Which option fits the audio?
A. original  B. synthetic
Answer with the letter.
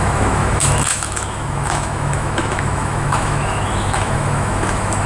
B